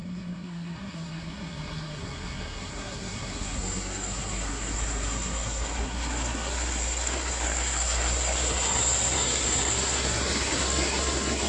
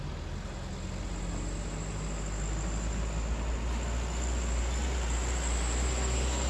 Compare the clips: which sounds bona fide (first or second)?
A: second